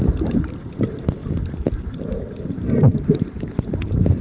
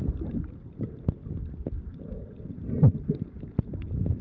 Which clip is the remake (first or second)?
first